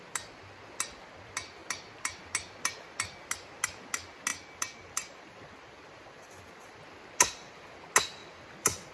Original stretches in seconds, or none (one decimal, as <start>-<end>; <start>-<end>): 0.0-4.3; 6.8-8.2